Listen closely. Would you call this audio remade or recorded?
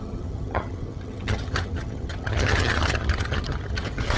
remade